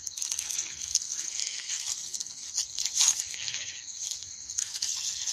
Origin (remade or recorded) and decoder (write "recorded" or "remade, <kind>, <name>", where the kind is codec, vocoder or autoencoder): remade, codec, SNAC